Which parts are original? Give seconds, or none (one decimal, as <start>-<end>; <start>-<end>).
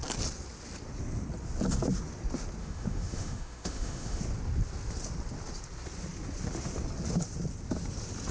0.0-2.6; 4.2-8.3